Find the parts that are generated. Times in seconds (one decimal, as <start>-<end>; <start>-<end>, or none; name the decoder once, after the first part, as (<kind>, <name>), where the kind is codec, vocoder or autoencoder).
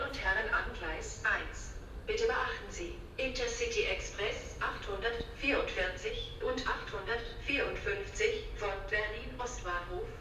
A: 0.0-1.2 (autoencoder, DAC-VAE); 6.1-7.3; 9.4-10.2